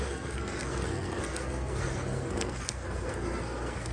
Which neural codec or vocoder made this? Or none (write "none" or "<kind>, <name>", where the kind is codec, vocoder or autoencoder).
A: codec, SNAC